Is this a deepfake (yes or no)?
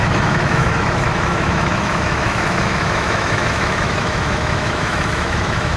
yes